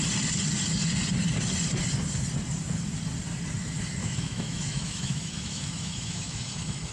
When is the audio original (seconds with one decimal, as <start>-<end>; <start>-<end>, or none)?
0.0-4.0